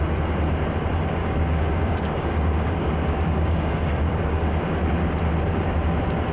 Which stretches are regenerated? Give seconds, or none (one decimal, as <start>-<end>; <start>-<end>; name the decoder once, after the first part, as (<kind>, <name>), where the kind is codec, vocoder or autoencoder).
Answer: 1.2-4.8 (codec, DAC)